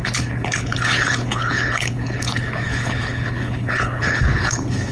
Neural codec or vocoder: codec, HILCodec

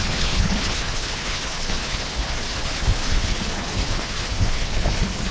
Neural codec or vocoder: codec, HILCodec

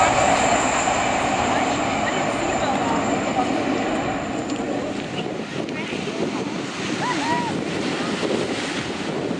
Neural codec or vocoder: none